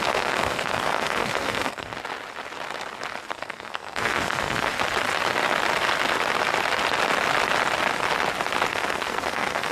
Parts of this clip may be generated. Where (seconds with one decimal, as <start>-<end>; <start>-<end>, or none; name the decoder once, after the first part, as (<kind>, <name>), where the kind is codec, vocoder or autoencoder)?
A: 0.0-1.9 (codec, SNAC); 3.2-4.7; 8.7-9.7